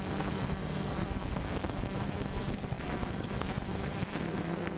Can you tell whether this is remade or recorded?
remade